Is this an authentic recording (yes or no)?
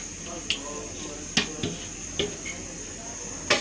yes